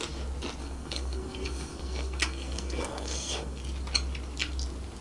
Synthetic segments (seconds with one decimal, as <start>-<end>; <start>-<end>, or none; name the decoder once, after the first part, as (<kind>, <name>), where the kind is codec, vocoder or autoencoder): 0.6-3.6 (codec, SNAC)